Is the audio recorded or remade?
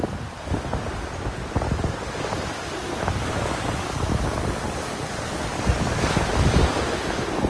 recorded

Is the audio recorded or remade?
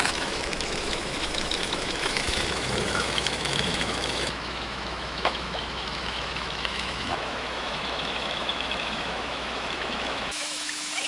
remade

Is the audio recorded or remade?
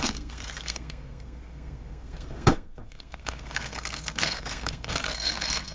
remade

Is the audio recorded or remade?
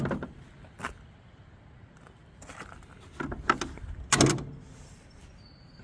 recorded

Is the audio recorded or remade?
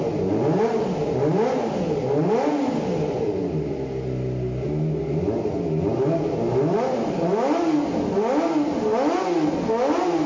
recorded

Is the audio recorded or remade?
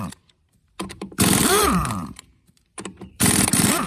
remade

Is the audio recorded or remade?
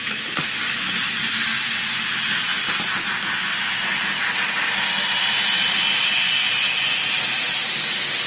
recorded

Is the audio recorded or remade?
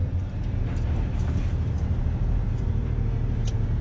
remade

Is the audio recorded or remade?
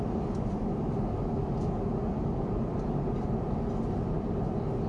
recorded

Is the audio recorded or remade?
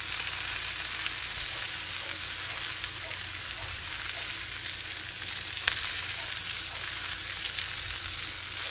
recorded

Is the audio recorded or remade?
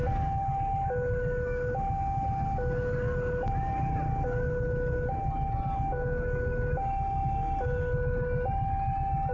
recorded